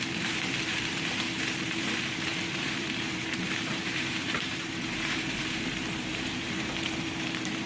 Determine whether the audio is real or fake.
fake